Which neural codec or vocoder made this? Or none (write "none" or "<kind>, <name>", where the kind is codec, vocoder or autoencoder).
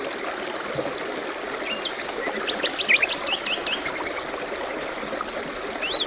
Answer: none